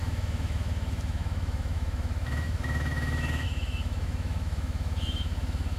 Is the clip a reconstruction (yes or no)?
yes